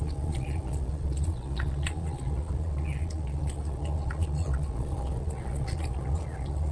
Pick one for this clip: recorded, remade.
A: remade